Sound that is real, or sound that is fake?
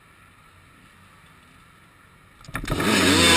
real